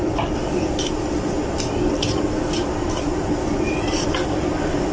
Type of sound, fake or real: real